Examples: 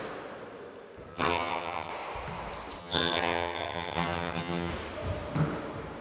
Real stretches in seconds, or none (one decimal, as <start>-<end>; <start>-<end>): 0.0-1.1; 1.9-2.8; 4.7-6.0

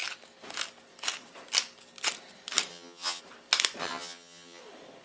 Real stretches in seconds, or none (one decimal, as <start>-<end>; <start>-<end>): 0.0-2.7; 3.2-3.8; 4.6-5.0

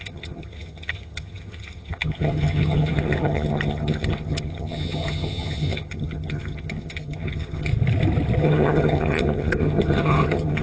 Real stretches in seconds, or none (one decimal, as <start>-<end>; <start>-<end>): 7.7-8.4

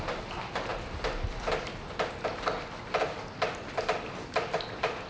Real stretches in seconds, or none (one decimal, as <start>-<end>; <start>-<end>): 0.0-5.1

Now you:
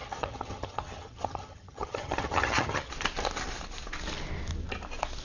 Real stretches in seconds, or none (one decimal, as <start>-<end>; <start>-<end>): 2.9-5.2

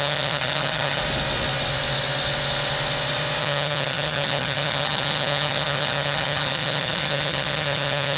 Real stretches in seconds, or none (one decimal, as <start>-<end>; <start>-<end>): 1.0-3.4

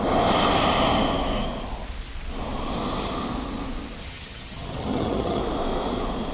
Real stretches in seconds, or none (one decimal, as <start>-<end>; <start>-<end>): 0.0-4.0; 5.4-6.3